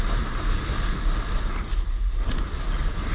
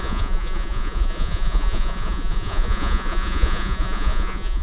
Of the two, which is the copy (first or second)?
second